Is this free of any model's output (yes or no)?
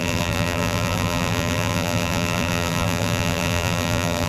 no